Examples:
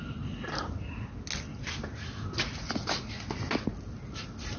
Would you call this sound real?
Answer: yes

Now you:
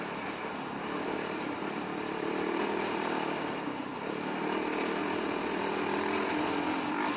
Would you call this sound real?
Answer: yes